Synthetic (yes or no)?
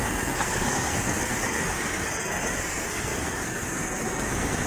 yes